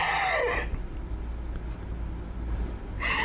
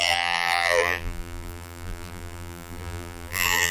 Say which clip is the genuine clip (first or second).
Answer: first